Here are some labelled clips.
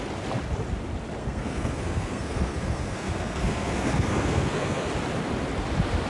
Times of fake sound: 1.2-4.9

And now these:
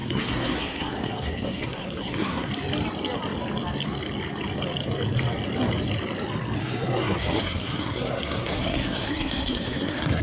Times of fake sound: 0.0-2.5; 6.6-10.2

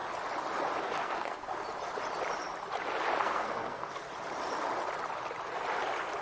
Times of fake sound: 0.8-1.5; 3.2-4.0